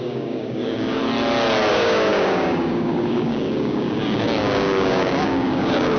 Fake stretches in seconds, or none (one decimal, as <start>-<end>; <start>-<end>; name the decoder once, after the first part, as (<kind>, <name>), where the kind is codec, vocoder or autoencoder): 0.0-1.0 (codec, DAC); 1.7-6.0